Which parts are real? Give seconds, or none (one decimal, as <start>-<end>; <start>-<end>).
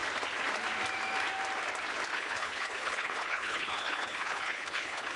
0.0-2.1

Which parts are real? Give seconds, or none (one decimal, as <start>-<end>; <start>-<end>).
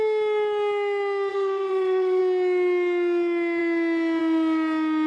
0.0-1.3; 2.2-5.1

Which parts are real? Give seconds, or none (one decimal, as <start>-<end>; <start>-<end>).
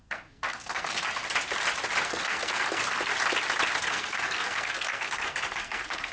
1.2-2.0; 3.1-3.8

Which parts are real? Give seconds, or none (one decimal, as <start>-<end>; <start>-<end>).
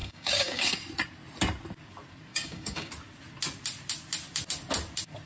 0.7-2.3; 2.9-5.3